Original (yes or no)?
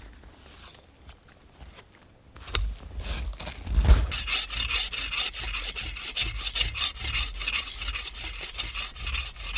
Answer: yes